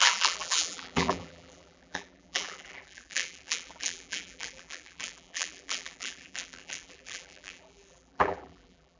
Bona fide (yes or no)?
no